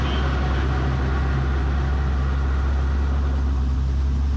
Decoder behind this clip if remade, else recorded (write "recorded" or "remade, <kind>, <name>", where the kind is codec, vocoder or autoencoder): recorded